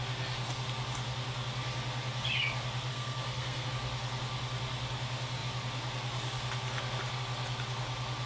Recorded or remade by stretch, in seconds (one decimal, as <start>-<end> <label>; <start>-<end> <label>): 0.0-2.9 recorded; 2.9-3.7 remade; 3.7-8.3 recorded